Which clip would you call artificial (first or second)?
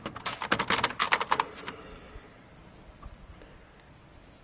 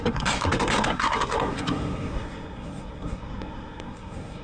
second